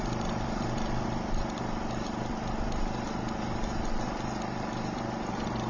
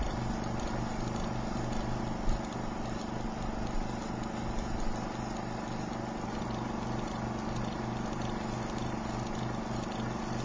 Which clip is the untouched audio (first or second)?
second